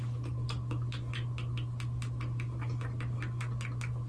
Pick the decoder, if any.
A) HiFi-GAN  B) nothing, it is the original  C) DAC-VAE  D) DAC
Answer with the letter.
B